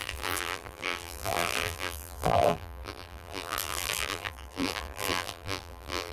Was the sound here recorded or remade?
remade